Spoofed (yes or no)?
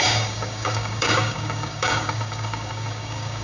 yes